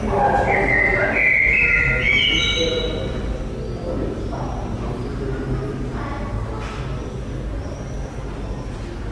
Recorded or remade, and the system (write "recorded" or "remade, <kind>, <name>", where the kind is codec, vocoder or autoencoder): recorded